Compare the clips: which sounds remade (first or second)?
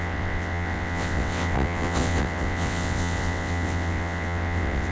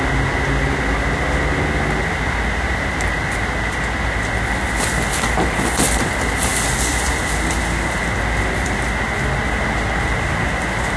first